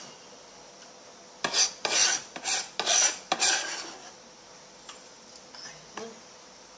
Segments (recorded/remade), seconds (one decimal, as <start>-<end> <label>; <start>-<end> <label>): 0.0-6.8 recorded